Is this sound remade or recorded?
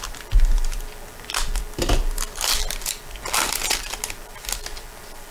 recorded